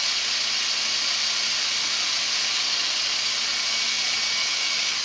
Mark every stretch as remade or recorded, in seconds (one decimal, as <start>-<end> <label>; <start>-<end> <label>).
0.0-4.4 recorded; 4.4-5.0 remade